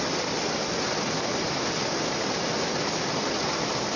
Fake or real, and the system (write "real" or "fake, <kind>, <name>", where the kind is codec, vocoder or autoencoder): real